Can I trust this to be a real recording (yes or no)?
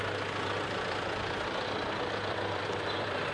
no